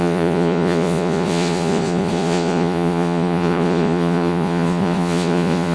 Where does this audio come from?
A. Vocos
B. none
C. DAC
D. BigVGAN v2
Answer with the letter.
A